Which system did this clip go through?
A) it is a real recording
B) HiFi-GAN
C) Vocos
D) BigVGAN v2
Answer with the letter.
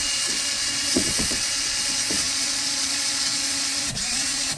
C